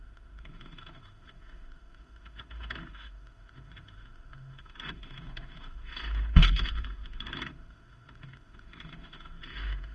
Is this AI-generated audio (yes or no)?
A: yes